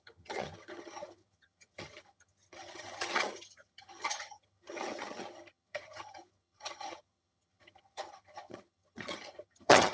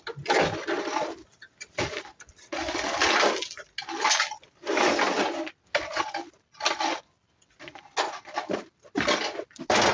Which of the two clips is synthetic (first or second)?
first